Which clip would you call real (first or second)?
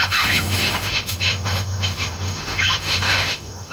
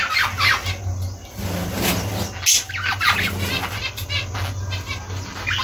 second